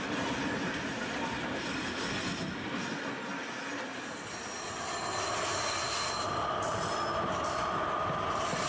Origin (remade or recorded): recorded